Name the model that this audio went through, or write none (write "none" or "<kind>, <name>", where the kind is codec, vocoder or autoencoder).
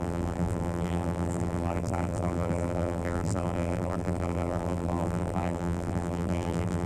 vocoder, BigVGAN v2